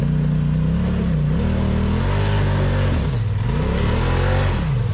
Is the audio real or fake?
real